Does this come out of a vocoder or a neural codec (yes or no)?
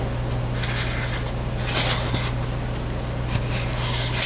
no